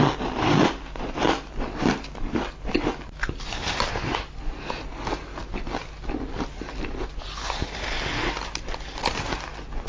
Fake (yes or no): no